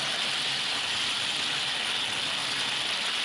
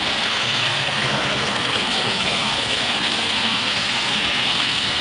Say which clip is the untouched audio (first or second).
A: first